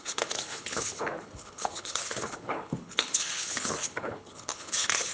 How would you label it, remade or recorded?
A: remade